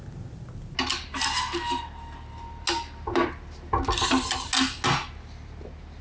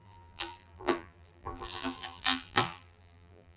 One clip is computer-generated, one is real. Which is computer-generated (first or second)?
second